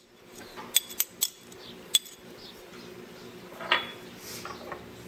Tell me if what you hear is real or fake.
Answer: real